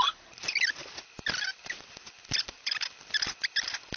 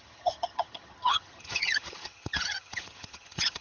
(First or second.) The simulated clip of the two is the second